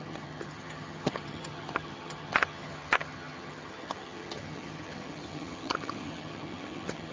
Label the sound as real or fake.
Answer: fake